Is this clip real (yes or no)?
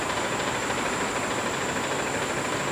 yes